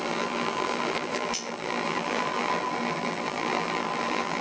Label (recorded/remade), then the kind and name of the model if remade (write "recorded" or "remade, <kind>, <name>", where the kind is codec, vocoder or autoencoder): remade, vocoder, BigVGAN v2